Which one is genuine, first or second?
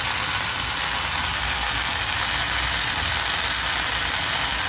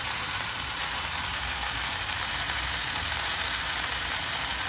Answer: first